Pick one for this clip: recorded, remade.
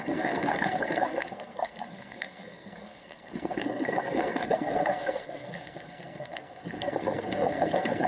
remade